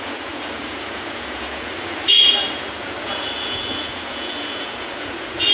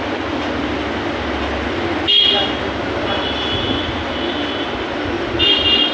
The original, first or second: second